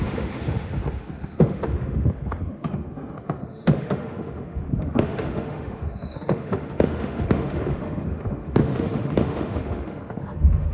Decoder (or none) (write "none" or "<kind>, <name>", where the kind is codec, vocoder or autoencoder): autoencoder, DAC-VAE